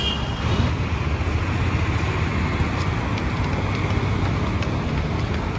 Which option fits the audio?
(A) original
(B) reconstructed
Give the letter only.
A